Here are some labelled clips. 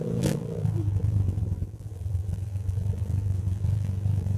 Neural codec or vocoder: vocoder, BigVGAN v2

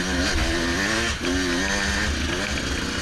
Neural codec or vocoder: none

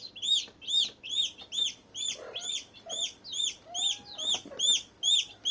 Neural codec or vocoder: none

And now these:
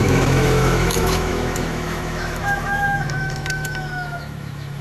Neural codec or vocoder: autoencoder, DAC-VAE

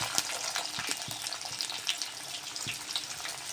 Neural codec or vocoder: none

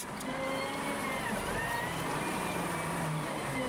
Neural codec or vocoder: none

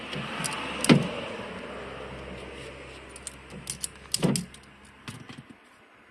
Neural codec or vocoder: none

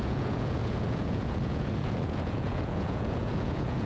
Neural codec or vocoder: vocoder, Vocos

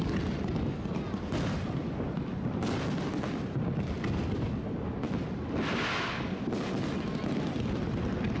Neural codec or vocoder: none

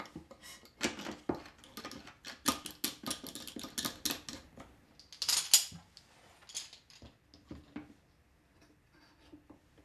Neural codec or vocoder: none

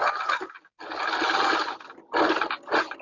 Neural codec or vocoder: none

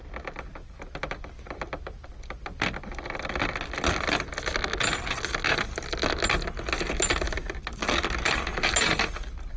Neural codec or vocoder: none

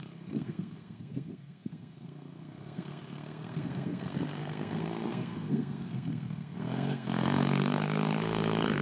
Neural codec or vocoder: codec, SNAC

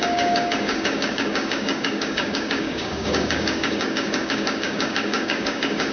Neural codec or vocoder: codec, DAC